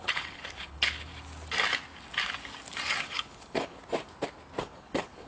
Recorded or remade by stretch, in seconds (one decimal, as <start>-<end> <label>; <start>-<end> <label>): 0.0-1.1 remade; 1.1-3.0 recorded; 3.0-3.8 remade; 3.8-4.6 recorded; 4.6-5.3 remade